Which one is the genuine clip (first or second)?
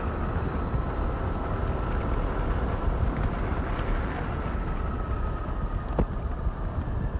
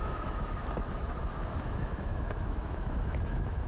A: first